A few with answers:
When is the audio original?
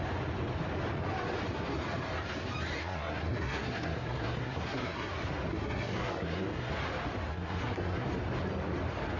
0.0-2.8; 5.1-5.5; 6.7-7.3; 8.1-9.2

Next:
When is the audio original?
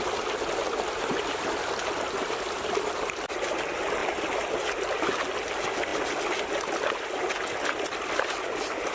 0.0-8.9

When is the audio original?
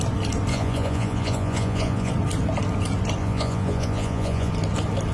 0.0-0.5; 2.1-3.2; 4.5-5.1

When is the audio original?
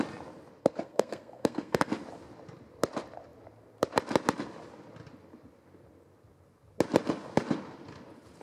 0.0-0.6; 1.9-8.4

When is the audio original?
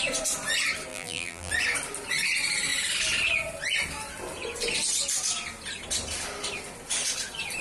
0.0-0.9; 1.5-7.6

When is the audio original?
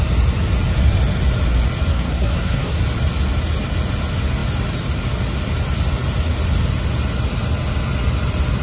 0.0-1.9; 2.8-8.6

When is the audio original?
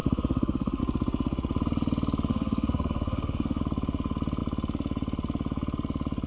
0.8-2.3; 3.6-6.3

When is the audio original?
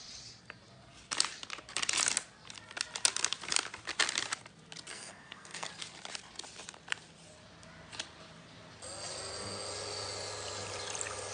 0.0-4.9; 5.7-11.3